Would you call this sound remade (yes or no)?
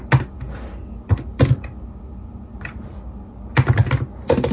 no